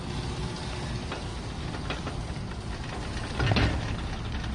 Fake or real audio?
real